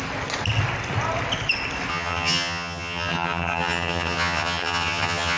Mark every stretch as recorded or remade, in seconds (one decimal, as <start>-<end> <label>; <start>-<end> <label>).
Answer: 0.0-1.9 recorded; 1.9-5.4 remade